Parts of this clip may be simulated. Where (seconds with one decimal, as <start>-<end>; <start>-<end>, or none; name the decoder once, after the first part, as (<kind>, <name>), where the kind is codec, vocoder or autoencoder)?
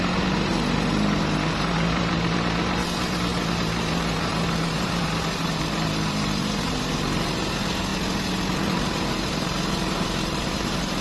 0.0-7.9 (vocoder, BigVGAN v2); 8.6-11.0